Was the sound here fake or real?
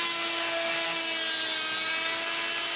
real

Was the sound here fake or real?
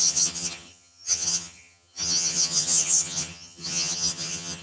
fake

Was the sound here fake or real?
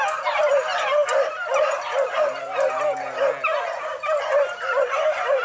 real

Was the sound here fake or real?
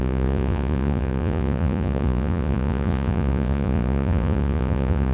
fake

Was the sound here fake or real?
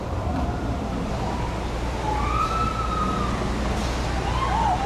real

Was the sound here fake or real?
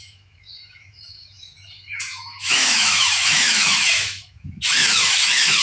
fake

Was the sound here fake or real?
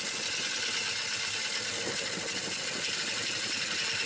real